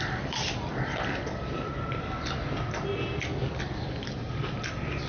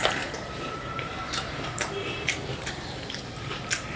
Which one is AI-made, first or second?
second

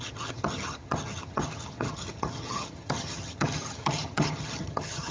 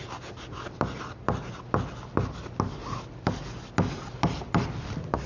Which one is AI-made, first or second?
first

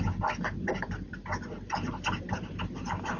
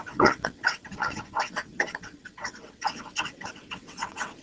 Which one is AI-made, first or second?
second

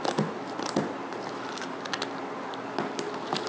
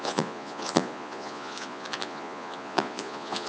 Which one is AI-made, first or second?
second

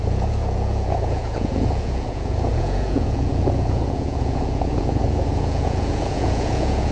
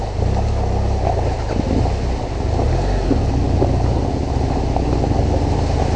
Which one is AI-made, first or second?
first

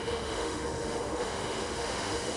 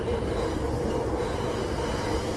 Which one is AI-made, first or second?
first